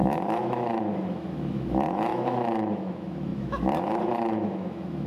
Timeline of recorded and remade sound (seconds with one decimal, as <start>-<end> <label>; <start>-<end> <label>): 0.0-5.1 remade